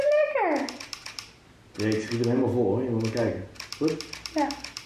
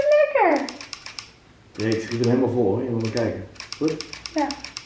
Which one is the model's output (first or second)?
second